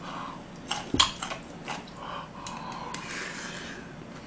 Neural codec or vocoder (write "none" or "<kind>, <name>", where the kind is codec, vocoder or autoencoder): none